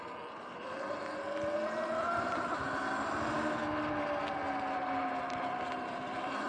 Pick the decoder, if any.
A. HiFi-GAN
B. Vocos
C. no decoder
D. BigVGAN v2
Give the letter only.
C